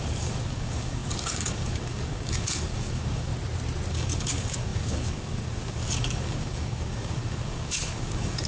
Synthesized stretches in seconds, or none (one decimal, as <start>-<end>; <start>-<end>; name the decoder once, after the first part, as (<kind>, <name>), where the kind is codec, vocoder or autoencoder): 0.0-3.3 (codec, DAC); 3.9-8.5